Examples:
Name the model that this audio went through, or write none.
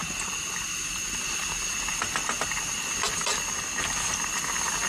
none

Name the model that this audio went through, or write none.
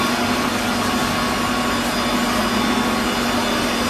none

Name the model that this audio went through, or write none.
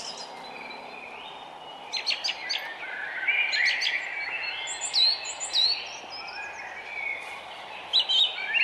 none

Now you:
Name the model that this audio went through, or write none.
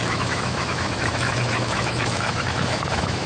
autoencoder, DAC-VAE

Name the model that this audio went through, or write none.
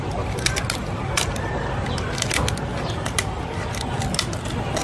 none